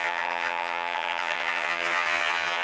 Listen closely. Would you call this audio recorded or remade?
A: remade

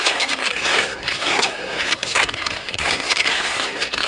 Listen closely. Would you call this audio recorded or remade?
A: remade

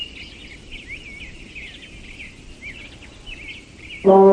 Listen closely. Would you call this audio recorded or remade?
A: recorded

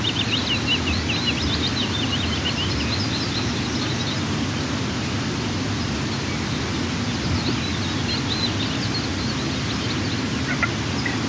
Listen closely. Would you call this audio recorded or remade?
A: recorded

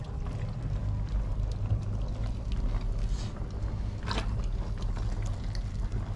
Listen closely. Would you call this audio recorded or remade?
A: recorded